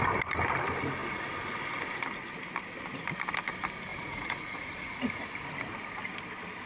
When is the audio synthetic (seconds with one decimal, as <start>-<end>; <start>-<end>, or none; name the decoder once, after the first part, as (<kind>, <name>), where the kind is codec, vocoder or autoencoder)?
3.9-5.2 (vocoder, Vocos)